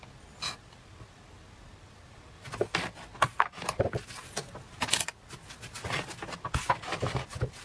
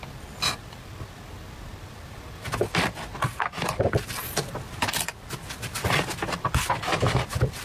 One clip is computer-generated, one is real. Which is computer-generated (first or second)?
second